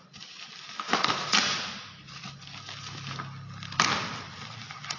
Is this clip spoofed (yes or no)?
no